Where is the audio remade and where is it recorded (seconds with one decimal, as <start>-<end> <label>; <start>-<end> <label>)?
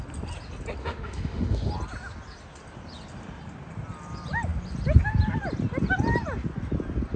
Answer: 0.0-0.8 recorded; 0.8-1.7 remade; 1.7-7.2 recorded